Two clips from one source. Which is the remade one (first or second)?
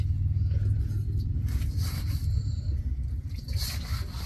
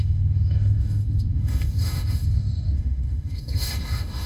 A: second